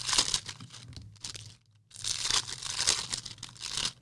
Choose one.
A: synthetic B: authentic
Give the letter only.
B